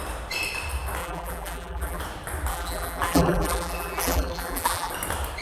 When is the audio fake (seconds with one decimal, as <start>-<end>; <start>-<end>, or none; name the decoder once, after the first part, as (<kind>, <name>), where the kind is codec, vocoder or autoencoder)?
1.0-2.0 (vocoder, BigVGAN v2); 2.5-4.9